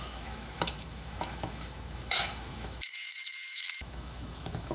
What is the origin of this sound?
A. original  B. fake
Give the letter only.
B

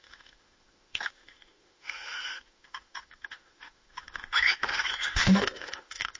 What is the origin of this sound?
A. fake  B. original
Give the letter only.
A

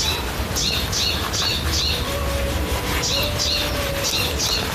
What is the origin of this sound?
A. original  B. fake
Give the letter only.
A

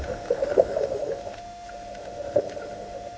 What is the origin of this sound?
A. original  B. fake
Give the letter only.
B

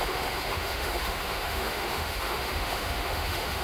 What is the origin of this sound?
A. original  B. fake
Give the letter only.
B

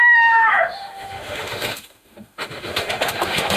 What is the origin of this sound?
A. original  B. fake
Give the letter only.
B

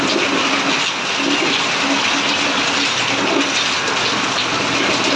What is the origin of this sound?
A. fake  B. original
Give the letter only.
B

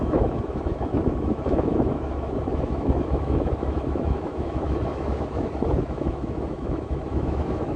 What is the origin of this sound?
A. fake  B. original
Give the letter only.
A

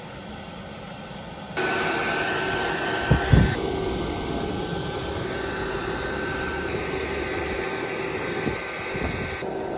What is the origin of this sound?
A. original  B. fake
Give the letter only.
A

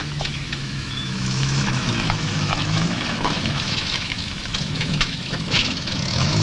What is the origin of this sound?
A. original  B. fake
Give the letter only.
B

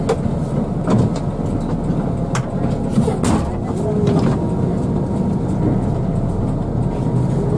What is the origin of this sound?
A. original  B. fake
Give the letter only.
A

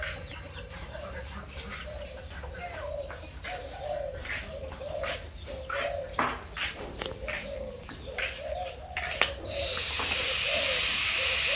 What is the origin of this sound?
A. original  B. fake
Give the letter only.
A